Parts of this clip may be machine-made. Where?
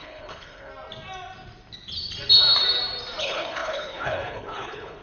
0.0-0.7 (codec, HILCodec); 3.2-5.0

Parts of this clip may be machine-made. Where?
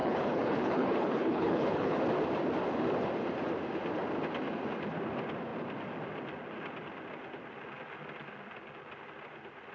0.0-2.0 (codec, HILCodec)